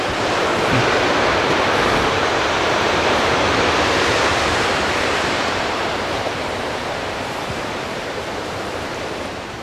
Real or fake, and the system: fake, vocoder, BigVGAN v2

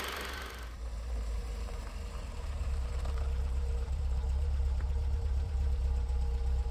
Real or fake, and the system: fake, vocoder, BigVGAN v2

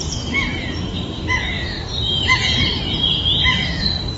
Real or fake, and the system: fake, vocoder, BigVGAN v2